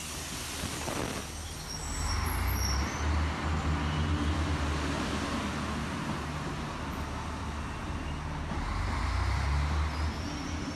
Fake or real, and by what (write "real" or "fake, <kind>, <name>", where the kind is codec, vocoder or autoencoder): real